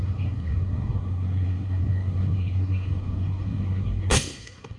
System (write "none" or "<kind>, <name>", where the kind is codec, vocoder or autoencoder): codec, SNAC